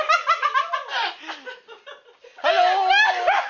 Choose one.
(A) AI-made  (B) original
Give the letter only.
B